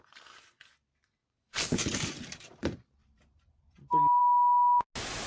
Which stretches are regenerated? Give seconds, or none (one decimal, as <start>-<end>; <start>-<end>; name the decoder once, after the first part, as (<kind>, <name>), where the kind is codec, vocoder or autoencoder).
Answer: 1.2-3.6 (vocoder, BigVGAN v2)